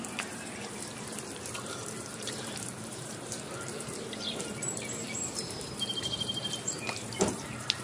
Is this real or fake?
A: fake